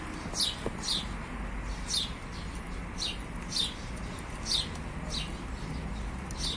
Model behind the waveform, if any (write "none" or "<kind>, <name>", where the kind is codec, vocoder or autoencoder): none